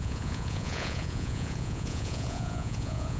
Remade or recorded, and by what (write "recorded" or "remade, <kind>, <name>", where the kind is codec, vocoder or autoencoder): remade, vocoder, Vocos